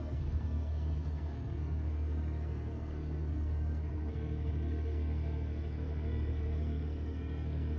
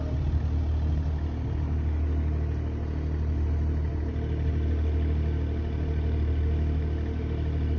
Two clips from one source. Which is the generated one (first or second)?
first